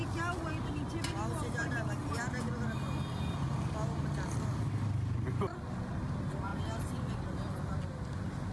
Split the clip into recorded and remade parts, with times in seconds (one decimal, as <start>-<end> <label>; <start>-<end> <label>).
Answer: 0.0-8.5 recorded